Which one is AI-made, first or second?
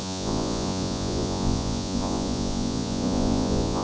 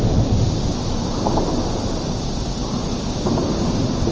first